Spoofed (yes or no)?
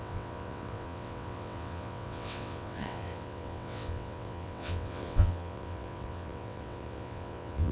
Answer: yes